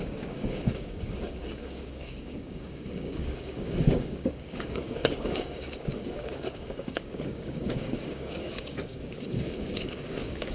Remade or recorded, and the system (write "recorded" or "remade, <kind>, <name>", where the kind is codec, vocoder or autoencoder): remade, codec, DAC